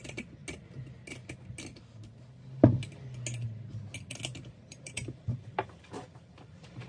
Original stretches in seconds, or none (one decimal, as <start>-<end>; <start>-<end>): 0.4-4.5